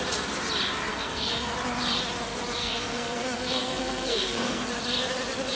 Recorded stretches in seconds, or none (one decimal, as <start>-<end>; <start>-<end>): 0.0-0.9; 1.5-2.6; 4.7-5.5